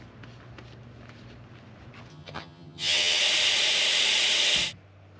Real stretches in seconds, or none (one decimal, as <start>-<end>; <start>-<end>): 0.0-2.1; 3.2-5.2